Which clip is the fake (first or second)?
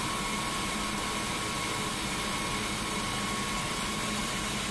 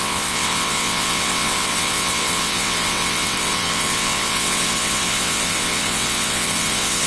second